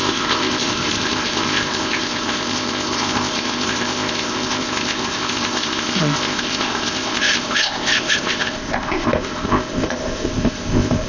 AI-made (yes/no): yes